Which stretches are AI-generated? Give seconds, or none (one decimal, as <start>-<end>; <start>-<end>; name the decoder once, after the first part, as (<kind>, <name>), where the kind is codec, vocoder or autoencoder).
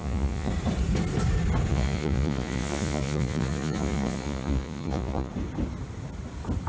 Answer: 0.0-0.5 (vocoder, Vocos); 1.7-5.3